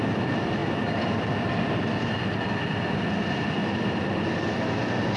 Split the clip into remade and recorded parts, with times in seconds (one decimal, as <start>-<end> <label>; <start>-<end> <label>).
0.0-5.2 recorded